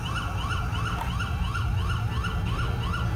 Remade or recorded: recorded